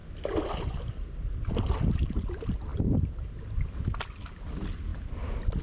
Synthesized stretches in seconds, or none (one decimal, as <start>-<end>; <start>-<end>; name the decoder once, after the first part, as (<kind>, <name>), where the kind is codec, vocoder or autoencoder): none